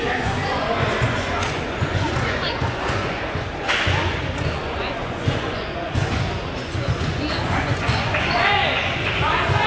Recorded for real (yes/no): no